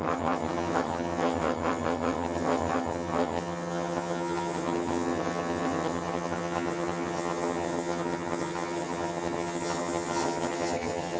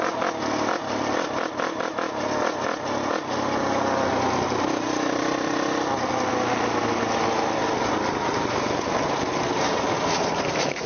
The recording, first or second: second